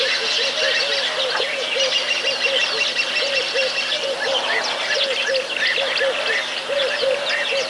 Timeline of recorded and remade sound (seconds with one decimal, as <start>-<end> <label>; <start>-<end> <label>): 0.0-7.7 recorded